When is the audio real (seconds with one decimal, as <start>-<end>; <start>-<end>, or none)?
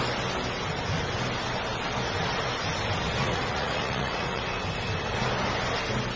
0.0-3.2; 4.4-6.2